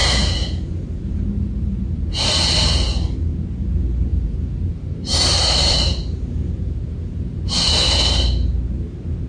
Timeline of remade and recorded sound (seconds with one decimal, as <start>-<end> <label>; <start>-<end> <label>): 0.0-2.2 remade; 2.2-4.1 recorded; 4.1-7.7 remade; 7.7-9.3 recorded